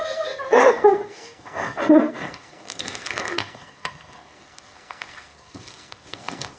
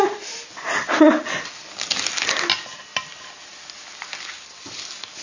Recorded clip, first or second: second